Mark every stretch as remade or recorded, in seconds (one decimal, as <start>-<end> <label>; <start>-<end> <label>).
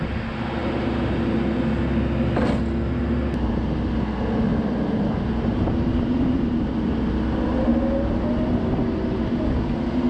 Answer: 0.0-0.6 recorded; 0.6-1.6 remade; 1.6-4.5 recorded; 4.5-6.7 remade; 6.7-10.1 recorded